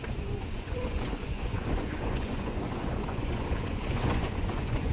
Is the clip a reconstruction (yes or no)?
yes